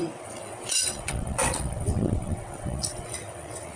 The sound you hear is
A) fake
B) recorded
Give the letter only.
A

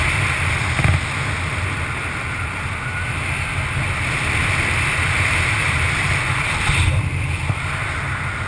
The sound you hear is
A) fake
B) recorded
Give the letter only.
B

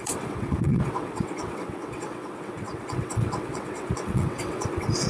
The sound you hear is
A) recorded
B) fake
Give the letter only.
B